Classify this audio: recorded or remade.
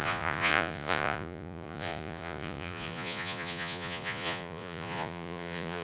remade